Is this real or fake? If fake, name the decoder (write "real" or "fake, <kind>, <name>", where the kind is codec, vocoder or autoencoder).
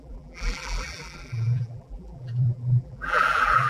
fake, vocoder, BigVGAN v2